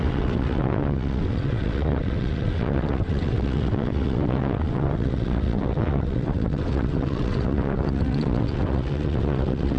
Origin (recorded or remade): remade